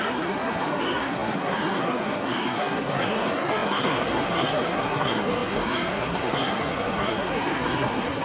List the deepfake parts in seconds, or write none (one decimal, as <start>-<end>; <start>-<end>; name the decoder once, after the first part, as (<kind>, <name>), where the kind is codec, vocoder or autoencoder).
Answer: 0.0-8.2 (codec, SNAC)